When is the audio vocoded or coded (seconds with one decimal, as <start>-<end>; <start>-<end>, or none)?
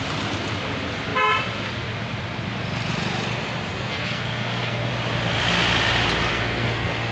3.7-4.9; 6.3-7.1